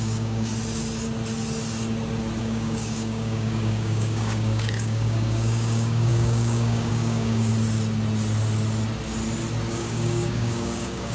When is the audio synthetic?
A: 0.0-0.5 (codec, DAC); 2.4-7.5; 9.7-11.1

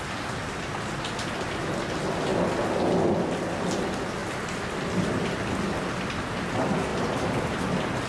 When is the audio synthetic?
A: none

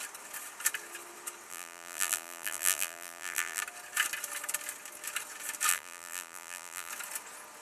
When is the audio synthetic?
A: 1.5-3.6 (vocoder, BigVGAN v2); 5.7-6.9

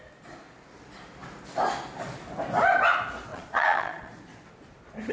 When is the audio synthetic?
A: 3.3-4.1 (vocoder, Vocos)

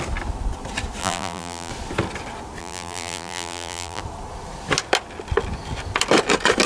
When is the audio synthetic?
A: 1.0-1.7 (vocoder, BigVGAN v2); 2.6-4.0

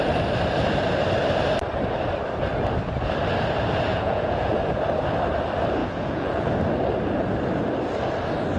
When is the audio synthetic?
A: 3.9-4.6 (vocoder, Vocos); 5.8-6.5